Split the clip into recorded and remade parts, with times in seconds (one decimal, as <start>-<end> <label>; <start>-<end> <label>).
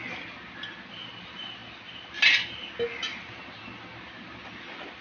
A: 0.0-5.0 recorded